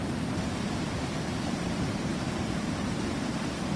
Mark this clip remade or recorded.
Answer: recorded